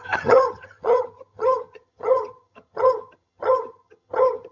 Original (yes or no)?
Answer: no